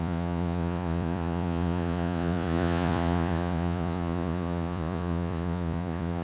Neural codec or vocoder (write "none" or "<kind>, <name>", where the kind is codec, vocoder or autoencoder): vocoder, Vocos